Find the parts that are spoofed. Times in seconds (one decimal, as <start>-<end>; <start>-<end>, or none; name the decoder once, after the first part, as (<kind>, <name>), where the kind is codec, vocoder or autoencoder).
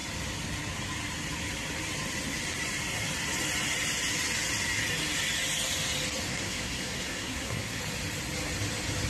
6.3-7.8 (codec, SNAC)